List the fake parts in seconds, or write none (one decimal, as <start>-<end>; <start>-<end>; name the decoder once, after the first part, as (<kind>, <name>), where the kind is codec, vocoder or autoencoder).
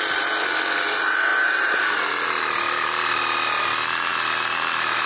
1.3-2.1 (vocoder, BigVGAN v2)